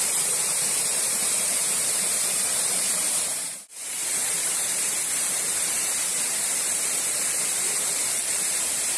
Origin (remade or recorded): remade